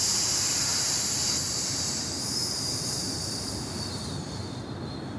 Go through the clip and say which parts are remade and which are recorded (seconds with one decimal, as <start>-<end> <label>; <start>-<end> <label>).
0.0-4.0 remade; 4.0-5.2 recorded